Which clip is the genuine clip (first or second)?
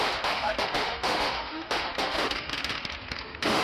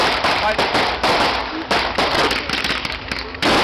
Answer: second